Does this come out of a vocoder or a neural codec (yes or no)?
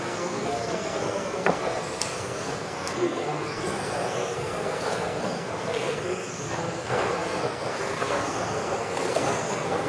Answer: yes